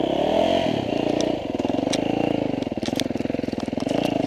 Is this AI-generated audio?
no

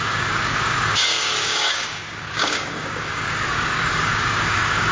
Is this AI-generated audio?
yes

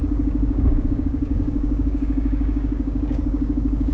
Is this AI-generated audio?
yes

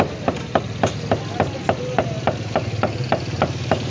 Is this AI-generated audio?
no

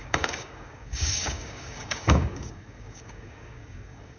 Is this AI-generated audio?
yes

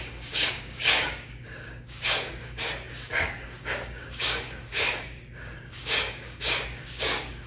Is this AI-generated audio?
yes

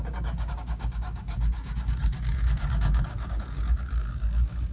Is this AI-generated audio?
yes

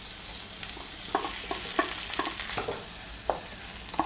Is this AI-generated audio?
no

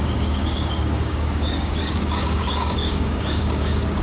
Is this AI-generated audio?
yes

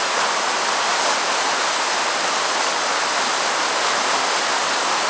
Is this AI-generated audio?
no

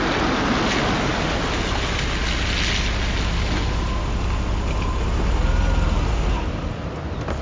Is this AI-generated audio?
no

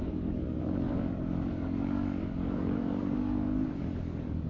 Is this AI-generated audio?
yes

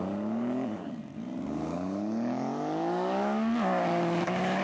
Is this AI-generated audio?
yes